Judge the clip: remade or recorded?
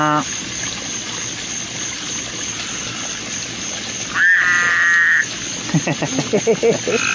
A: recorded